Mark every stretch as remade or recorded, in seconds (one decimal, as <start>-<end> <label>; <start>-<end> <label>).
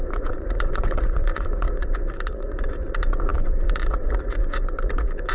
0.0-5.3 remade